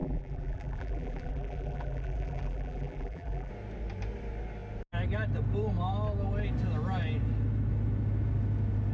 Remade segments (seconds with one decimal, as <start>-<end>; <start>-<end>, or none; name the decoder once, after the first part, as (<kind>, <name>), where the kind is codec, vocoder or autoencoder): 0.0-3.5 (vocoder, BigVGAN v2)